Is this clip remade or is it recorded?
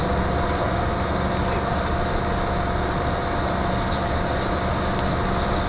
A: recorded